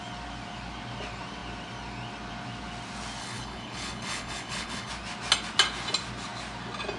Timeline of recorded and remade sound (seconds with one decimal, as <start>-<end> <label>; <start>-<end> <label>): 0.0-3.2 recorded; 3.2-4.9 remade; 4.9-7.0 recorded

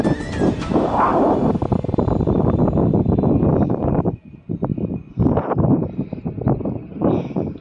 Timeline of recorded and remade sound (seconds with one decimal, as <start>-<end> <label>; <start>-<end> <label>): 0.0-1.1 recorded; 1.1-2.6 remade; 2.6-7.6 recorded